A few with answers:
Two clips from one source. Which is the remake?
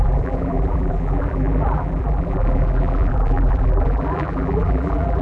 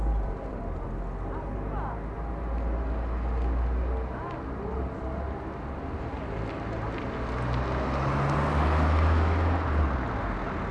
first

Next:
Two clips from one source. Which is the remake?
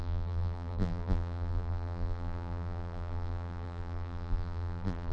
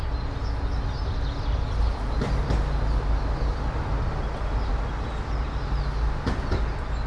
first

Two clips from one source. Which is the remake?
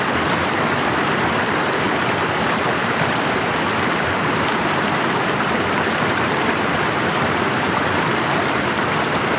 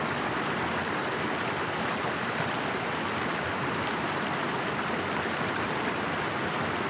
first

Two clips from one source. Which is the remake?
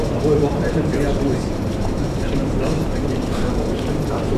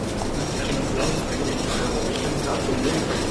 first